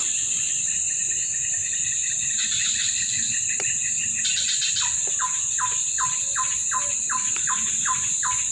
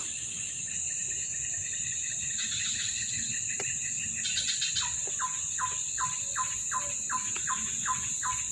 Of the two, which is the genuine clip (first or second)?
second